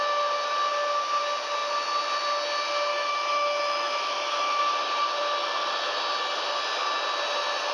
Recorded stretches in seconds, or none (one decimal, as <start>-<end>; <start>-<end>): 0.0-2.9; 4.6-7.7